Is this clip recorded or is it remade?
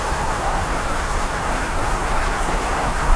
remade